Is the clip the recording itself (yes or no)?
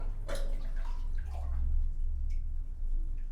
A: yes